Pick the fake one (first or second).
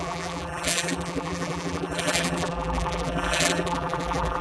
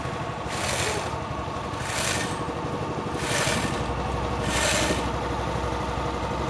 first